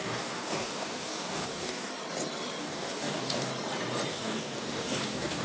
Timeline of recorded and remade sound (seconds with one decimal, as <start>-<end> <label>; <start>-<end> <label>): 0.0-1.9 remade; 1.9-2.6 recorded; 2.6-3.5 remade; 3.5-4.1 recorded; 4.1-5.4 remade